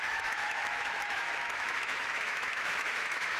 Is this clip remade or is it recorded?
remade